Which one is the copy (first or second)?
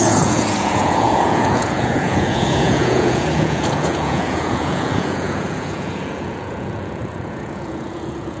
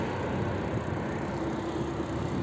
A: first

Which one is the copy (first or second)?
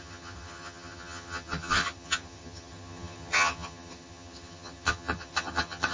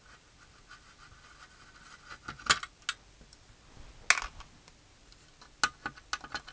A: first